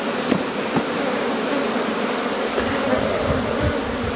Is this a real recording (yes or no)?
yes